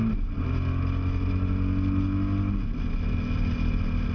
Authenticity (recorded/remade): recorded